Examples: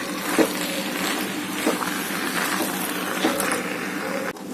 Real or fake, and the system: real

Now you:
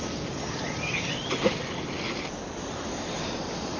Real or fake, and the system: real